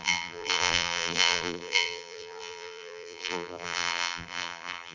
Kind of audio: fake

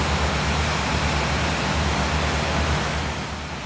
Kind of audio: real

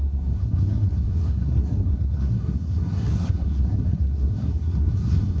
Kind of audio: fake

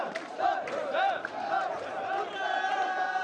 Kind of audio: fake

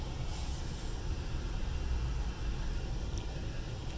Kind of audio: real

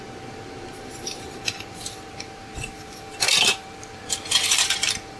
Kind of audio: fake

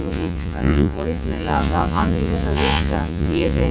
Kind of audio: fake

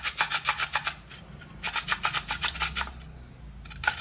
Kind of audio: real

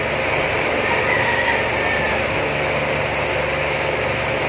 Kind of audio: real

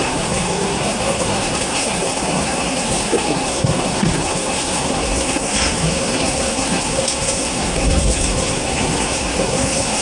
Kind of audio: fake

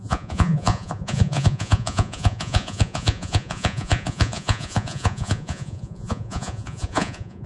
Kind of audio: fake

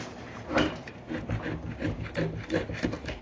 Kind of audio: real